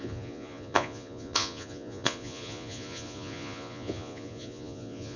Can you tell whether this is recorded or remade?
remade